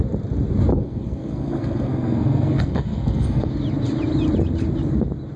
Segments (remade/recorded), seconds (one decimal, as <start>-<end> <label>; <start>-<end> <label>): 0.0-0.7 recorded; 0.7-3.5 remade; 3.5-5.4 recorded